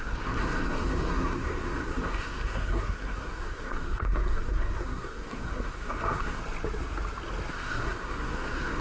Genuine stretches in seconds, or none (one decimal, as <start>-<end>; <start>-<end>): 6.4-7.5

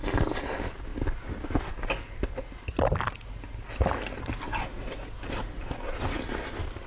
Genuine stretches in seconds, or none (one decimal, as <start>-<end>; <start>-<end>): 0.0-6.9

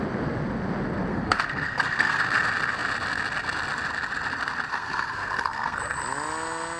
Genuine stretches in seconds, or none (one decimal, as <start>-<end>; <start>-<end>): 0.0-1.1; 2.2-4.7; 5.8-6.8

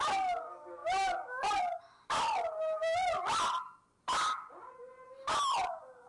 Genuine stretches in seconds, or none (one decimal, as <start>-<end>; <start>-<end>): 0.0-6.1

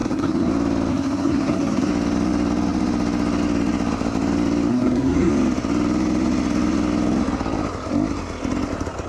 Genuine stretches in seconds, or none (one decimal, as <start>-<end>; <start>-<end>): 0.5-0.9; 1.9-4.7; 5.3-9.1

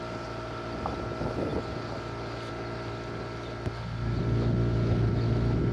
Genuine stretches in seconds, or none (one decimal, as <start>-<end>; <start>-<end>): 0.0-5.7

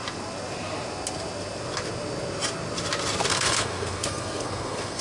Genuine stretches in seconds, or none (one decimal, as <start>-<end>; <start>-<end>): 0.0-3.3

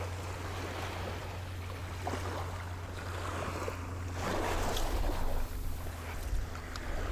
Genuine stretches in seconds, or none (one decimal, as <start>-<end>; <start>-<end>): 0.0-7.1